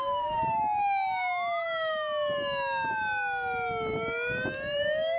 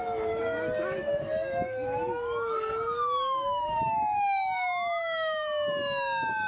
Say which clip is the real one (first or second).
first